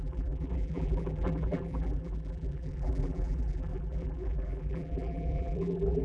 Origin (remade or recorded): remade